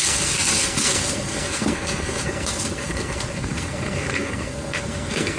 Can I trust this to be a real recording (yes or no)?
no